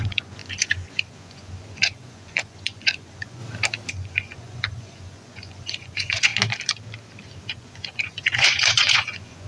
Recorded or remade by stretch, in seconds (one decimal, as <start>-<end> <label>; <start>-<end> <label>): 0.0-3.4 remade; 3.4-3.9 recorded; 3.9-6.3 remade; 6.3-7.4 recorded; 7.4-9.5 remade

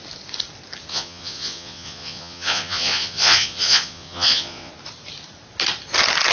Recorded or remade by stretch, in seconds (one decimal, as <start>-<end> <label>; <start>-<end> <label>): 0.0-0.9 recorded; 0.9-4.7 remade; 4.7-6.3 recorded

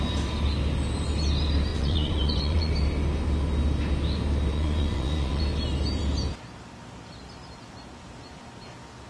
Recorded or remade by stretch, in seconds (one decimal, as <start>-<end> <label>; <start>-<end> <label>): 0.0-1.7 recorded; 1.7-2.7 remade; 2.7-4.5 recorded; 4.5-5.4 remade; 5.4-9.1 recorded

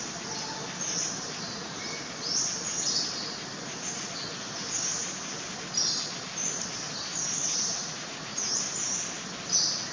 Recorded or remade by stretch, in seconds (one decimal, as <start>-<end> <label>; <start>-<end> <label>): 0.0-7.4 recorded; 7.4-8.8 remade; 8.8-9.9 recorded